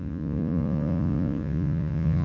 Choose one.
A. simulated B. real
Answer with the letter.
A